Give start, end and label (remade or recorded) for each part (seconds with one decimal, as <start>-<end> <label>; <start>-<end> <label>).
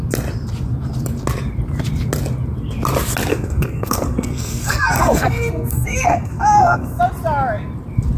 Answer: 0.0-3.3 recorded; 3.3-7.0 remade; 7.0-8.2 recorded